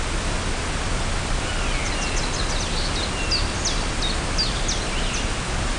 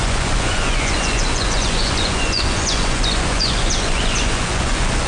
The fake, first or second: second